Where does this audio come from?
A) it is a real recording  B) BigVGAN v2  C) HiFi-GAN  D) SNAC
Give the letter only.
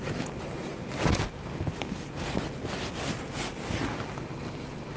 A